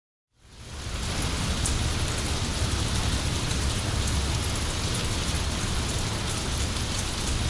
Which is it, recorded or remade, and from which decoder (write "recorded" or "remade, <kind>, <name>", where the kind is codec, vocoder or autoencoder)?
recorded